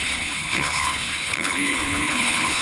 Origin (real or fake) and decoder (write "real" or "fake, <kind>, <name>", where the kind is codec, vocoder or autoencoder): fake, codec, HILCodec